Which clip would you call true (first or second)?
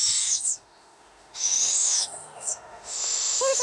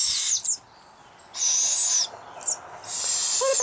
second